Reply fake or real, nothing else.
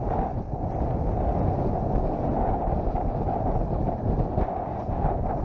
real